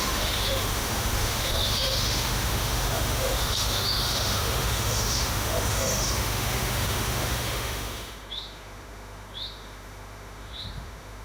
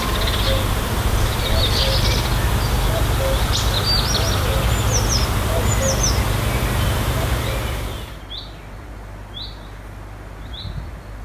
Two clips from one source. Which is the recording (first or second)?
second